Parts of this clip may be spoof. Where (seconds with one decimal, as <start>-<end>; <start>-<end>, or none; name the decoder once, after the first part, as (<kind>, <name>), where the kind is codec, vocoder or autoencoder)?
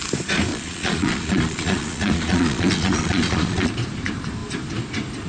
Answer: 0.5-3.7 (vocoder, Vocos)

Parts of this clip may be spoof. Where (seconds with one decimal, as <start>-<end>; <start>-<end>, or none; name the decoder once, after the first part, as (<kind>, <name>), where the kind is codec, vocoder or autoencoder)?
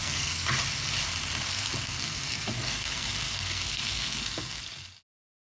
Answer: 0.0-0.5 (codec, SNAC); 1.5-4.6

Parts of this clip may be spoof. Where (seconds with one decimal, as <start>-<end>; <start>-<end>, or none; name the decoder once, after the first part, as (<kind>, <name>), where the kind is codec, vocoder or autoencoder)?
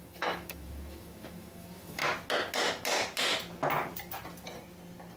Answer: 0.0-2.0 (autoencoder, DAC-VAE)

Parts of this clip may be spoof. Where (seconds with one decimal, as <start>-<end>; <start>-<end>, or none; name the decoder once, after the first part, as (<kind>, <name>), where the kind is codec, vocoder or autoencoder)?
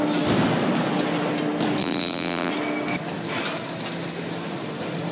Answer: 1.8-2.5 (vocoder, BigVGAN v2)